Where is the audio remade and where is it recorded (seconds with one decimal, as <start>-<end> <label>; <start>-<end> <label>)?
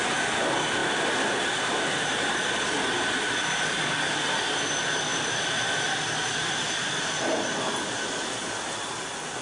0.0-0.8 recorded; 0.8-1.7 remade; 1.7-9.4 recorded